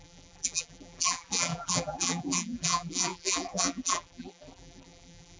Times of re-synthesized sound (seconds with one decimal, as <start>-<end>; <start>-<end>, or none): 0.0-5.4

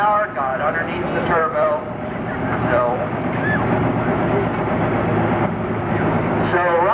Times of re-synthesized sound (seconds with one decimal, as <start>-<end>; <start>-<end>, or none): 0.5-3.6

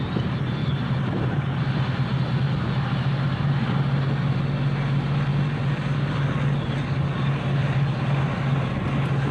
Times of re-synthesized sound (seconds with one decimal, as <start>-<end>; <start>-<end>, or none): 0.6-1.4; 5.3-6.2

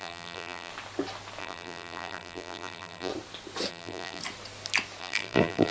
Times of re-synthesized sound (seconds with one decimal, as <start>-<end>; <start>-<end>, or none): 0.0-0.7; 1.4-3.1; 3.7-4.2; 5.0-5.7

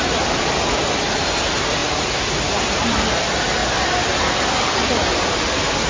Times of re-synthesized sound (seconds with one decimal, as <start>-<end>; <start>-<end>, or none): 3.6-4.4

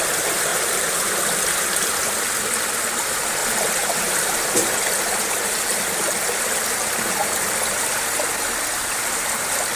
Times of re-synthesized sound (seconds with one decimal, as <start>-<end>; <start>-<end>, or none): 0.5-1.2; 3.4-4.7; 8.8-9.3

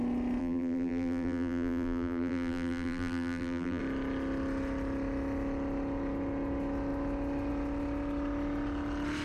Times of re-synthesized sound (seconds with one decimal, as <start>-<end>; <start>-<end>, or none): 0.4-3.8

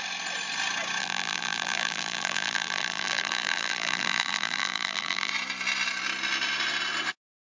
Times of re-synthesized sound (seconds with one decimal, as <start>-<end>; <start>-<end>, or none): 1.0-5.3